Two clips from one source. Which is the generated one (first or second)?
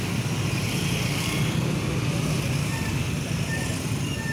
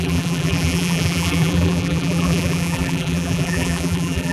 second